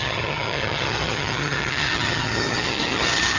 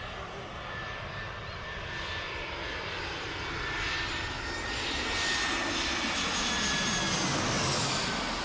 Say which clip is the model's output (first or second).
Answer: first